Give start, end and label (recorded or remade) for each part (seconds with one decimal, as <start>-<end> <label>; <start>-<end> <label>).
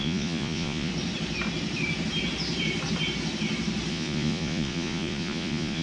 0.0-0.9 remade; 0.9-3.9 recorded; 3.9-5.8 remade